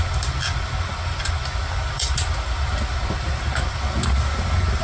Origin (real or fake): real